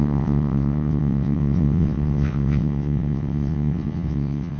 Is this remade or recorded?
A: remade